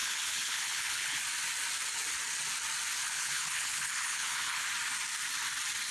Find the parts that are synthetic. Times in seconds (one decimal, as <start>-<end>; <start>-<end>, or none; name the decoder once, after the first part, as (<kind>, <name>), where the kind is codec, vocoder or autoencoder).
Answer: 0.0-1.2 (codec, HILCodec); 3.0-4.7